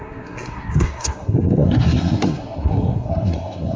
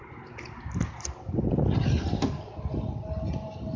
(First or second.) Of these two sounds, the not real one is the first